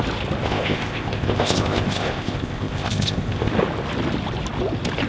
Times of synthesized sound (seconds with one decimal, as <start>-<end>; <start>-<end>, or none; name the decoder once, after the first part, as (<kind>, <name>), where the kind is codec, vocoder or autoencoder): 0.4-3.5 (codec, ZipCodec)